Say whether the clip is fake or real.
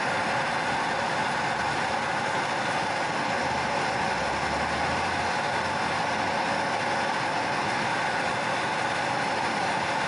real